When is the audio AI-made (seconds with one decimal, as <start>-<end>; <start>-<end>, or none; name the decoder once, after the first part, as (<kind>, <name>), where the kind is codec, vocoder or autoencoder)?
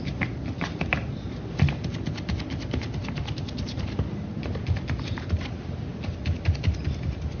none